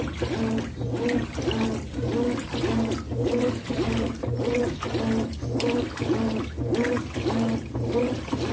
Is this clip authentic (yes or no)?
yes